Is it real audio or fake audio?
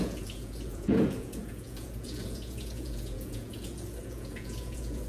fake